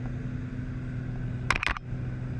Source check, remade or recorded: recorded